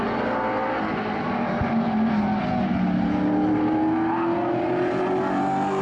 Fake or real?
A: real